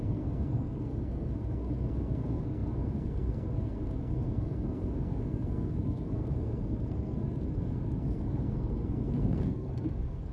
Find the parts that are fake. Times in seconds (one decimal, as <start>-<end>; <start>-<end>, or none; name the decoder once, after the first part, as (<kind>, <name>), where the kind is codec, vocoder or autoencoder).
0.0-10.3 (codec, SNAC)